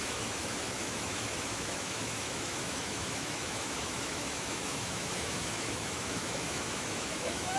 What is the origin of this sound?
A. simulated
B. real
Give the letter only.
A